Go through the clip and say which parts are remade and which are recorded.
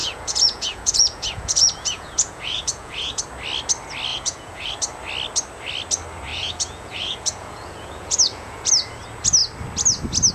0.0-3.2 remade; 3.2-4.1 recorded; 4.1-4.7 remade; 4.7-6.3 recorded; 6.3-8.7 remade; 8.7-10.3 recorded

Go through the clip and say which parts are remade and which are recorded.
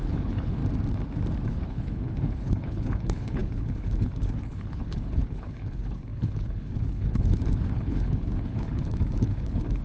0.0-0.6 remade; 0.6-1.5 recorded; 1.5-9.8 remade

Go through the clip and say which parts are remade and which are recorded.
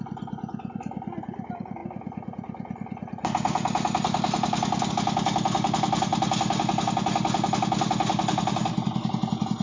0.0-9.6 recorded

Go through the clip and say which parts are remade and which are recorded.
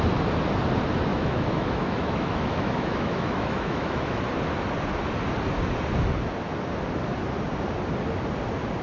0.0-1.1 recorded; 1.1-4.2 remade; 4.2-8.8 recorded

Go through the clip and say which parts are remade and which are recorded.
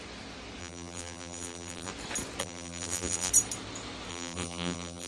0.0-0.6 recorded; 0.6-1.9 remade; 1.9-2.4 recorded; 2.4-3.3 remade; 3.3-4.1 recorded; 4.1-5.1 remade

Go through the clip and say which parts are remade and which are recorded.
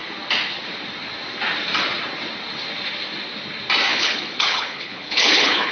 0.0-3.9 recorded; 3.9-5.7 remade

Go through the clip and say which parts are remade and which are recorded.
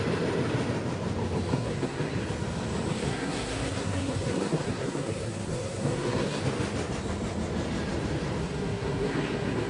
0.0-1.5 recorded; 1.5-2.2 remade; 2.2-3.0 recorded; 3.0-6.4 remade; 6.4-8.4 recorded; 8.4-9.7 remade